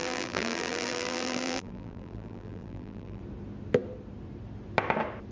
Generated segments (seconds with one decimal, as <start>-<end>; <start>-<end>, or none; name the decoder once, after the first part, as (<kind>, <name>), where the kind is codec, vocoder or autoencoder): 0.0-3.2 (vocoder, BigVGAN v2)